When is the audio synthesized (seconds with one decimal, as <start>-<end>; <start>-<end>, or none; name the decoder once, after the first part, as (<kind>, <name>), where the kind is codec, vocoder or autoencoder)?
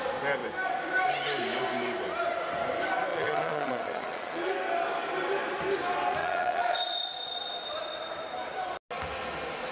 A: 3.1-4.5 (vocoder, Vocos); 6.2-7.0